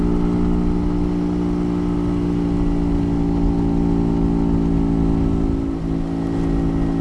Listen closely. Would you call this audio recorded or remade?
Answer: recorded